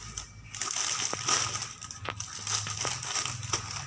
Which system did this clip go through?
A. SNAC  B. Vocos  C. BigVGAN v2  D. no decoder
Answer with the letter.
D